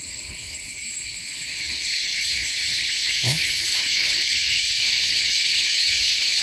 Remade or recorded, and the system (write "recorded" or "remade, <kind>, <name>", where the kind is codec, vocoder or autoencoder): remade, codec, HILCodec